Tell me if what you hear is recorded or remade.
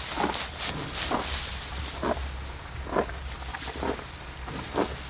recorded